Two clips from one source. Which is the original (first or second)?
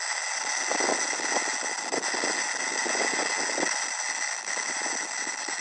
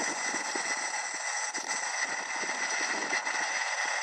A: first